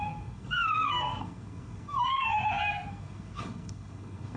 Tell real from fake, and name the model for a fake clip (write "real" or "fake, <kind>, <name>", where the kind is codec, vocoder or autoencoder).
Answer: fake, codec, SNAC